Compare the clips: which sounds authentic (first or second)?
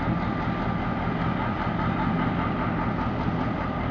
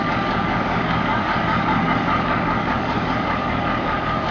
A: first